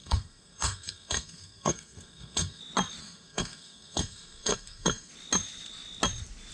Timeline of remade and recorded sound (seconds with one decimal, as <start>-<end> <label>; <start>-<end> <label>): 0.0-2.6 remade; 2.6-3.0 recorded; 3.0-5.1 remade; 5.1-6.5 recorded